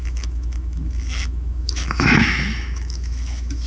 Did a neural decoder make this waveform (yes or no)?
yes